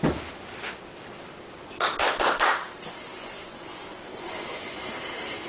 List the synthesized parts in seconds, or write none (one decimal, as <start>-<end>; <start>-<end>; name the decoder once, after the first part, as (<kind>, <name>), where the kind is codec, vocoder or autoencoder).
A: 3.1-4.9 (vocoder, Vocos)